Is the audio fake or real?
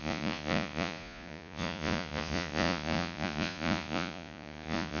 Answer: fake